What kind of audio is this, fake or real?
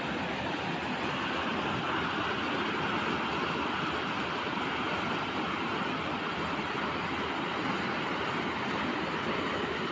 real